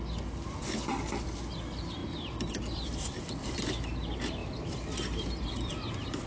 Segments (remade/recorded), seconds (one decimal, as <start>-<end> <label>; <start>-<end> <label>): 0.0-2.0 recorded; 2.0-4.0 remade; 4.0-4.4 recorded; 4.4-5.7 remade; 5.7-6.3 recorded